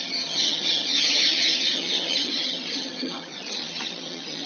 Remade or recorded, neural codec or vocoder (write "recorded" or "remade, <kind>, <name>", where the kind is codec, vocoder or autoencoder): remade, vocoder, HiFi-GAN